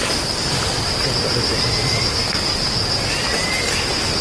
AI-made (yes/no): no